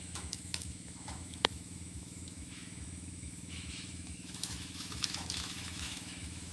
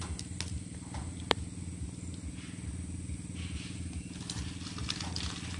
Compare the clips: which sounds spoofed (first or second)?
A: first